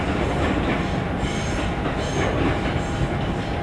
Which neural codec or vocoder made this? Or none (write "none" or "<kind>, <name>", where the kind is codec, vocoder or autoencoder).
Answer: none